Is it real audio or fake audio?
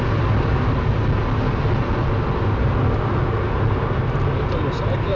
real